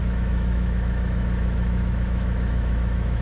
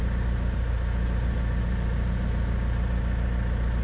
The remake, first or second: first